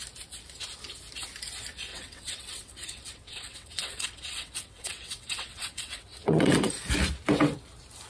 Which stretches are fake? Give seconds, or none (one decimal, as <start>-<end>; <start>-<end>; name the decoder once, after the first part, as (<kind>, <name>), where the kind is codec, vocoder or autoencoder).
1.9-6.7 (vocoder, WaveNeXt)